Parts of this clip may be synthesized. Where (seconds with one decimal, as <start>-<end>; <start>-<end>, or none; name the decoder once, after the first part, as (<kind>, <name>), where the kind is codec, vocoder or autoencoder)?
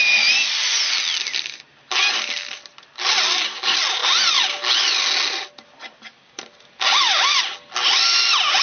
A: none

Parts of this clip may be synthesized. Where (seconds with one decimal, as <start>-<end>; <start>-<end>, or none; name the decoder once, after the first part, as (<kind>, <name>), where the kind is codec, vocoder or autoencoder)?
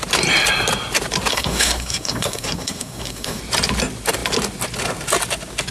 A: 1.3-3.4 (codec, SNAC)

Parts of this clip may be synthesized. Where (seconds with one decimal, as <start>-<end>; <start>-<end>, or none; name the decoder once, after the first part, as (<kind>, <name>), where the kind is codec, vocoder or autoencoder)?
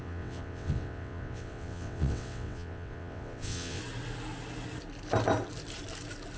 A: 0.0-3.8 (vocoder, WaveNeXt)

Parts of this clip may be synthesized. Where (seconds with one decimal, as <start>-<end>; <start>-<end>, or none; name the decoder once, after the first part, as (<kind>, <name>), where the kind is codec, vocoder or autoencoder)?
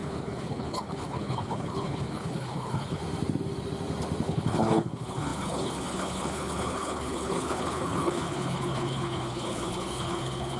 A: 0.0-3.0 (codec, HILCodec); 4.2-10.6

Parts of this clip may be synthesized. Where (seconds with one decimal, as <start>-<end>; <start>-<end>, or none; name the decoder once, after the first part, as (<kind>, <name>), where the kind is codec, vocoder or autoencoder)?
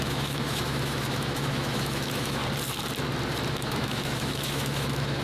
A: 0.0-2.4 (autoencoder, DAC-VAE); 3.5-5.2